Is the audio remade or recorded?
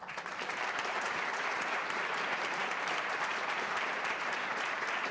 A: remade